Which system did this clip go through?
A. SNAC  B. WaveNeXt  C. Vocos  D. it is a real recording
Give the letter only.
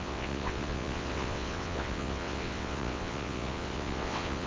B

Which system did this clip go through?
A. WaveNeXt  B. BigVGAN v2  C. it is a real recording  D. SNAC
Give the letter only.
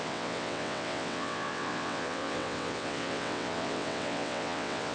A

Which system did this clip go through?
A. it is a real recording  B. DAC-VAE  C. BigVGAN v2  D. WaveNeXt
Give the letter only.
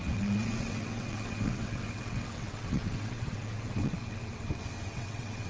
D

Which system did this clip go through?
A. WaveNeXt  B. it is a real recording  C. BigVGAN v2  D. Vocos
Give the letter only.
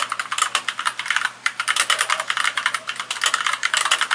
B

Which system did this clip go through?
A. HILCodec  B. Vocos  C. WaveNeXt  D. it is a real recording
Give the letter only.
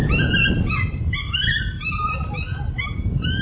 D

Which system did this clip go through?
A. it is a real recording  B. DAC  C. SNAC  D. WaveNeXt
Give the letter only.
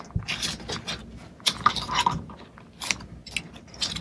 A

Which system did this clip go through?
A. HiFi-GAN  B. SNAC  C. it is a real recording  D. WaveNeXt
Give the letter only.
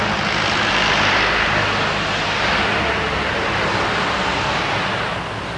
C